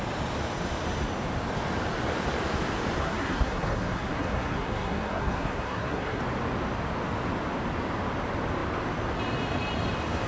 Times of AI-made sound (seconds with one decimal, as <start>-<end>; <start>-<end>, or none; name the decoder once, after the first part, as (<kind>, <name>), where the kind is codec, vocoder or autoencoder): 3.0-6.2 (codec, SNAC)